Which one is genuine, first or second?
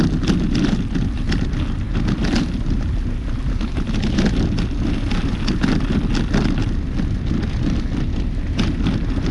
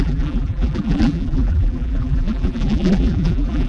first